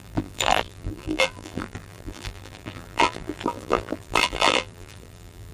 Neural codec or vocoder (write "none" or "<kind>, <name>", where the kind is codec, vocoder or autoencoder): vocoder, BigVGAN v2